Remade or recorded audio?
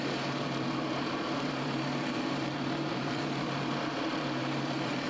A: remade